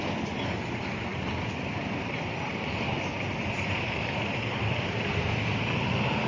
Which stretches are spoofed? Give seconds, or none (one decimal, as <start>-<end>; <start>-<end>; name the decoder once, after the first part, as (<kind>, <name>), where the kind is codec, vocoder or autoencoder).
1.1-4.9 (vocoder, BigVGAN v2)